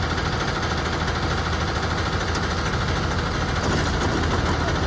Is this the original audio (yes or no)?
yes